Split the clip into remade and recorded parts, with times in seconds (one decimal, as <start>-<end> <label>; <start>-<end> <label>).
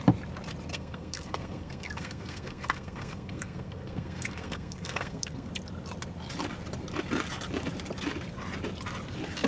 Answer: 0.0-0.7 recorded; 0.7-5.5 remade; 5.5-9.5 recorded